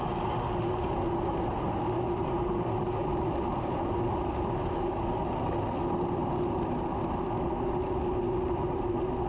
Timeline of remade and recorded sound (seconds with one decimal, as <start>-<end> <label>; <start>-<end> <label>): 0.0-9.3 recorded